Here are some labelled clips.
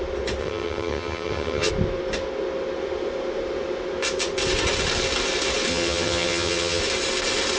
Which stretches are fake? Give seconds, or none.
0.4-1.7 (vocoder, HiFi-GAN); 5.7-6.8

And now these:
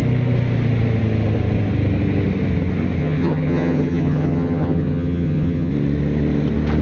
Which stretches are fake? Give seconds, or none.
3.0-5.7 (vocoder, HiFi-GAN)

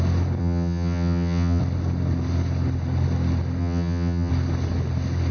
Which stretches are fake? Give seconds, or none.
0.4-1.6 (vocoder, HiFi-GAN); 3.6-4.3

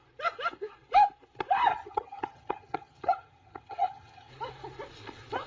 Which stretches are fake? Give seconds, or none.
1.7-4.3 (vocoder, HiFi-GAN)

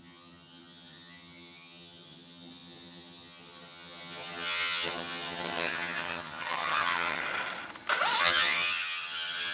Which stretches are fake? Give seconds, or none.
0.0-7.2 (vocoder, HiFi-GAN); 8.2-9.5

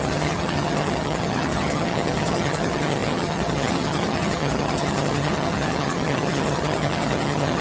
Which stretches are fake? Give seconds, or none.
0.0-7.6 (vocoder, HiFi-GAN)

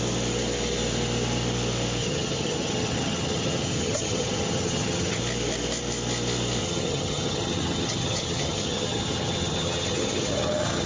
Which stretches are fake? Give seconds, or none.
2.0-5.2 (vocoder, HiFi-GAN); 6.6-10.9